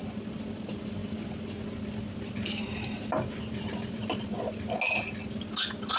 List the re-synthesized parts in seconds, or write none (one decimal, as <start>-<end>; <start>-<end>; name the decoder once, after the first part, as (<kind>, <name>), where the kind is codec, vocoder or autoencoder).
none